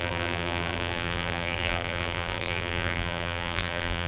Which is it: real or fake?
fake